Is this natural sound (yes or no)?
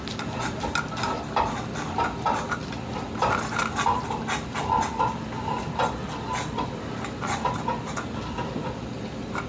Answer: yes